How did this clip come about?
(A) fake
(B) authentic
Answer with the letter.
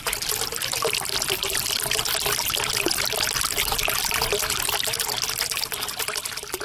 B